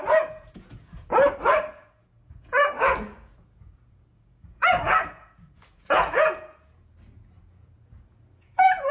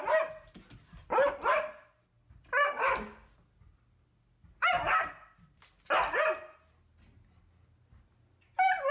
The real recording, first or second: second